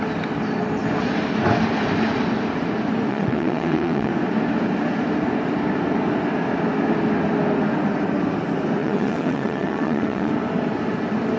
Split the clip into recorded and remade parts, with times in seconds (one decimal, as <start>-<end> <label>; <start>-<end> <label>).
0.0-3.1 recorded; 3.1-4.1 remade; 4.1-8.8 recorded; 8.8-10.3 remade; 10.3-11.4 recorded